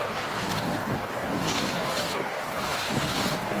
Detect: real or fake fake